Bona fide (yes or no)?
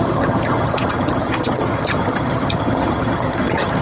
no